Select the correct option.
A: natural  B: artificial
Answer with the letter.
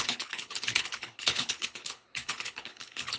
B